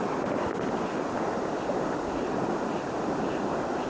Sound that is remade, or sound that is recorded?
recorded